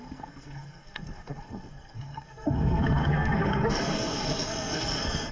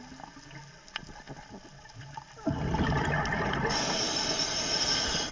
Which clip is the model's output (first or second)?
first